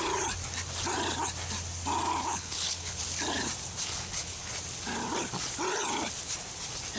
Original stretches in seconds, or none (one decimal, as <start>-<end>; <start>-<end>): 0.0-2.3; 3.0-3.8; 4.5-7.0